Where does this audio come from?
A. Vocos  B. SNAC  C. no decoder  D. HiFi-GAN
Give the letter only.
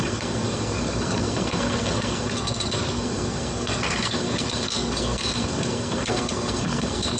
B